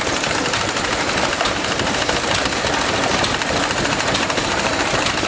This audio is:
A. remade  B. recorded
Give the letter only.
A